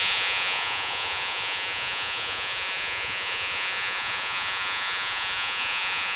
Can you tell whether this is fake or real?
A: fake